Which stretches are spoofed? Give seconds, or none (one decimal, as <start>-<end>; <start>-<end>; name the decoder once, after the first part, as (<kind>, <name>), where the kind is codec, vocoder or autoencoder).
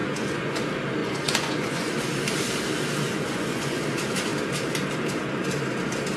0.0-0.6 (vocoder, Vocos); 1.0-1.9; 3.0-3.8